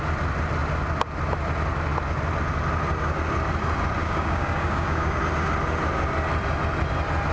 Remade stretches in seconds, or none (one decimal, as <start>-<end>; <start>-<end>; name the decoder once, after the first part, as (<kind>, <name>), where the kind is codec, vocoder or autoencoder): 4.0-5.1 (codec, DAC)

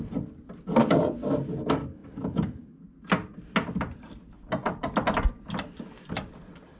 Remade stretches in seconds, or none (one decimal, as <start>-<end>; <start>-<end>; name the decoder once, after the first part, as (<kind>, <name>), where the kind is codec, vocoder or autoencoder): 0.8-1.3 (codec, DAC)

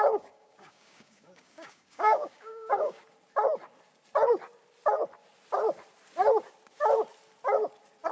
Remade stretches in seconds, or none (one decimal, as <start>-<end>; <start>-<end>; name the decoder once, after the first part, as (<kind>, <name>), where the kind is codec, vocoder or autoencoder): 0.0-3.0 (codec, DAC)

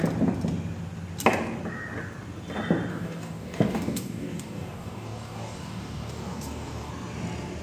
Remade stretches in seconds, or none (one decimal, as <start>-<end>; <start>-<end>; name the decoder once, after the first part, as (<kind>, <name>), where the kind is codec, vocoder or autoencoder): 2.9-6.9 (codec, DAC)

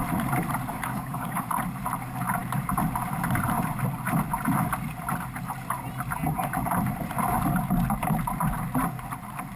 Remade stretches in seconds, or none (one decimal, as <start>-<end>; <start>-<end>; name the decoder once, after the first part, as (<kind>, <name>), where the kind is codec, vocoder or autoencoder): 0.7-1.5 (codec, DAC)

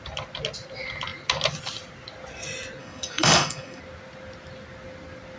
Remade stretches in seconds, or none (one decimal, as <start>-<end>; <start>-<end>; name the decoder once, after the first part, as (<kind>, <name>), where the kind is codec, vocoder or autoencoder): 2.8-3.8 (codec, DAC)

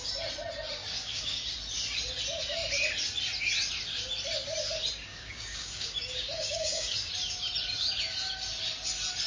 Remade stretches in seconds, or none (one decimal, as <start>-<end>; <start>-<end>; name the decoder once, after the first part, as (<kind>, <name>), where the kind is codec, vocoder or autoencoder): 0.8-1.4 (codec, DAC); 5.1-7.1